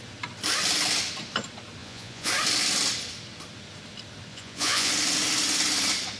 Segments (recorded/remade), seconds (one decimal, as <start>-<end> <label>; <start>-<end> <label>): 0.0-1.8 recorded; 1.8-2.3 remade; 2.3-4.3 recorded; 4.3-4.9 remade; 4.9-6.2 recorded